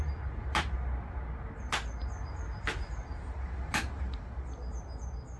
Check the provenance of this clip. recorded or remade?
recorded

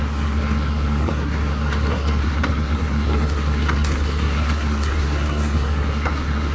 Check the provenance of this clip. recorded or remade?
remade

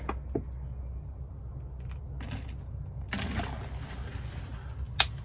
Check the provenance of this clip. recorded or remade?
recorded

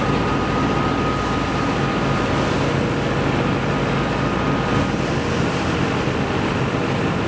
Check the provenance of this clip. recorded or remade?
recorded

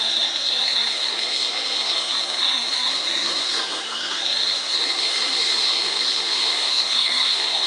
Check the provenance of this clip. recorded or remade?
remade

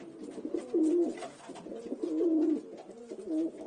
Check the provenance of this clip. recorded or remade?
recorded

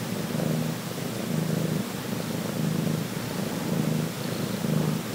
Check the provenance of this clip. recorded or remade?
recorded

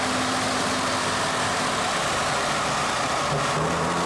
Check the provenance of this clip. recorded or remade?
recorded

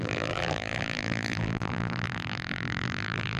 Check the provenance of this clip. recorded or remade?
remade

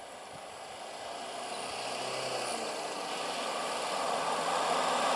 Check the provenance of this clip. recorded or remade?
recorded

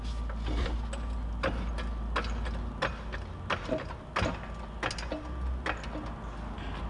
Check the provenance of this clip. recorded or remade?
recorded